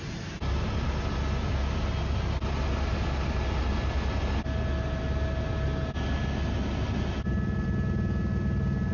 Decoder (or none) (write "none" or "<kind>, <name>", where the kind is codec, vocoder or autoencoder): none